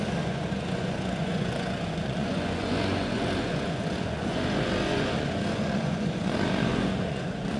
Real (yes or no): no